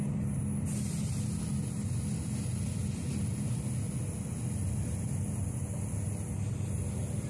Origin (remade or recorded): recorded